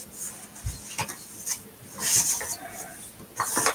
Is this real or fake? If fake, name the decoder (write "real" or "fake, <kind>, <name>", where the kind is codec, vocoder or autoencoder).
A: real